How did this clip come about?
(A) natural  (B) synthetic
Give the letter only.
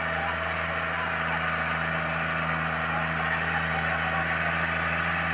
A